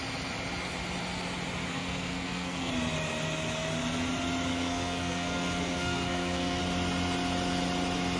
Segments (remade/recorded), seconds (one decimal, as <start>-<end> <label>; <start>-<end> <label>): 0.0-1.7 recorded; 1.7-2.7 remade; 2.7-4.5 recorded; 4.5-6.6 remade; 6.6-8.2 recorded